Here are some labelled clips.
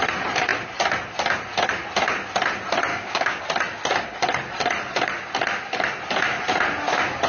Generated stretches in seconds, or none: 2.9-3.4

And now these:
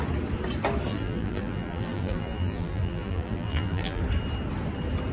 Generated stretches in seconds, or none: 0.9-4.0

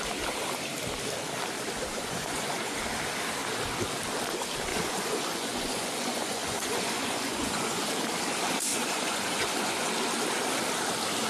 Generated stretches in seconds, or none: 1.9-2.8; 4.7-7.9; 8.7-9.9

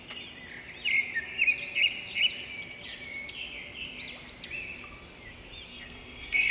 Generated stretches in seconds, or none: 5.7-6.5